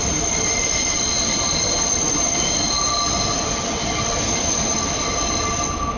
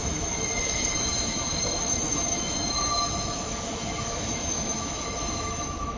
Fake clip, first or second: second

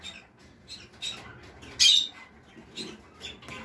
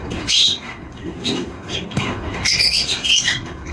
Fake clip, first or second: second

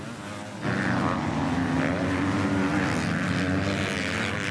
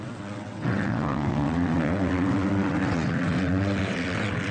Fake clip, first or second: second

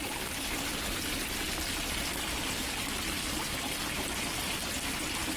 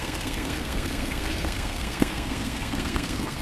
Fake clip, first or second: second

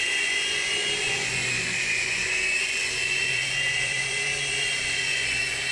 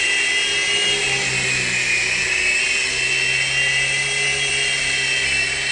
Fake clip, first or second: first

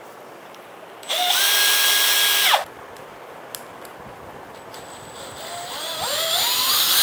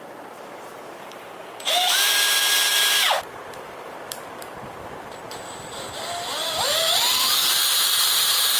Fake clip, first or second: second